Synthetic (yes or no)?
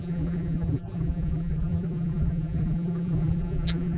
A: yes